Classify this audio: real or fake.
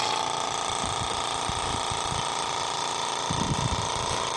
real